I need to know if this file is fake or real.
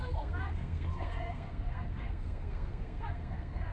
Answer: fake